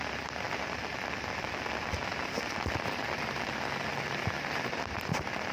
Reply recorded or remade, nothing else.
remade